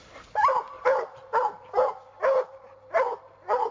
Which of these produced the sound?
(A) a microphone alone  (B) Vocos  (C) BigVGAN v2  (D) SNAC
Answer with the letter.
A